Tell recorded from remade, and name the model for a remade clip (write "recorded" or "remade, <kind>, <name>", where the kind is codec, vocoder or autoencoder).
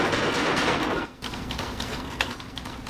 remade, codec, SNAC